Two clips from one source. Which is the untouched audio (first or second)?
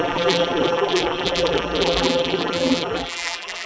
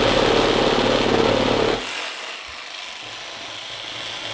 second